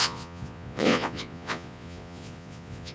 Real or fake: fake